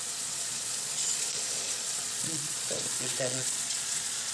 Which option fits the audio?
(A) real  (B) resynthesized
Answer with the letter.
B